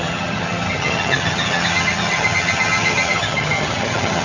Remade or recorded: remade